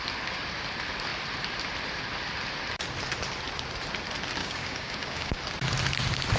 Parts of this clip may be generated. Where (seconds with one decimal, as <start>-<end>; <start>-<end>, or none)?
4.4-5.4